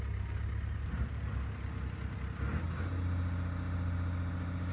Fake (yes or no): no